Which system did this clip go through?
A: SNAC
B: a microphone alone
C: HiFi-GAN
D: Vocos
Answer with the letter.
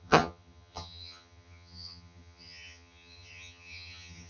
C